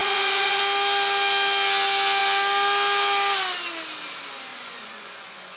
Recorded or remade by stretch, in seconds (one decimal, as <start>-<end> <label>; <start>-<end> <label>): 0.0-0.6 remade; 0.6-4.5 recorded; 4.5-5.6 remade